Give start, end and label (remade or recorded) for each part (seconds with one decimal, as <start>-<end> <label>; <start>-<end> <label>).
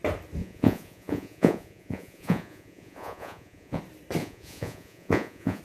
0.0-0.4 recorded; 0.4-3.8 remade; 3.8-4.2 recorded; 4.2-5.6 remade